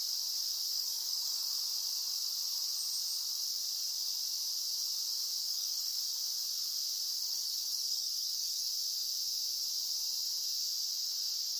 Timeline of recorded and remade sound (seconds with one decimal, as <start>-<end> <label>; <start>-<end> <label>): 0.0-0.5 recorded; 0.5-1.6 remade; 1.6-5.4 recorded; 5.4-6.0 remade; 6.0-7.2 recorded; 7.2-8.7 remade; 8.7-11.6 recorded